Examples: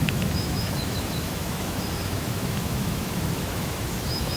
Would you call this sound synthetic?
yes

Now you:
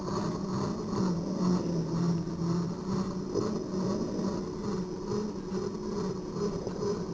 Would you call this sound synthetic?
no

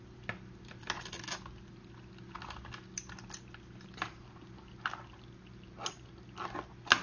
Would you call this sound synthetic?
no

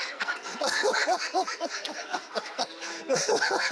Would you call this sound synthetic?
yes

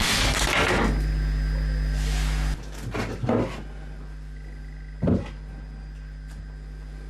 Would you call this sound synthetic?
no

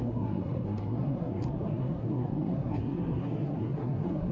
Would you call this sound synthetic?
yes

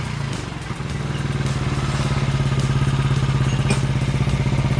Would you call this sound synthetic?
no